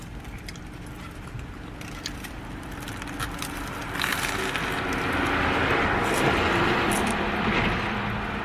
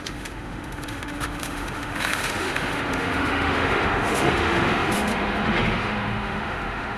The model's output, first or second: second